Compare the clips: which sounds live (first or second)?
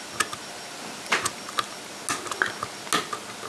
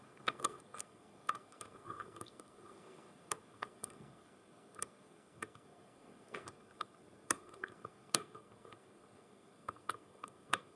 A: first